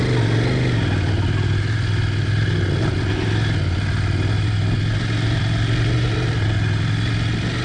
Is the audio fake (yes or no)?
no